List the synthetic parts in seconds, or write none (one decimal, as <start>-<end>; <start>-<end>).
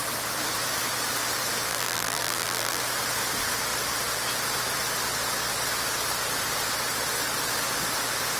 1.7-2.8